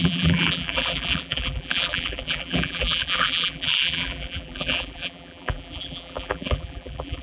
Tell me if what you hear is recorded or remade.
remade